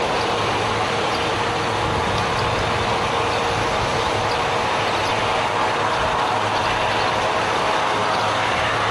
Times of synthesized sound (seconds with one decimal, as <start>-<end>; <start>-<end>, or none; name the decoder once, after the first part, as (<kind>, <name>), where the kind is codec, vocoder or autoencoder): 3.9-5.1 (vocoder, BigVGAN v2); 8.0-8.9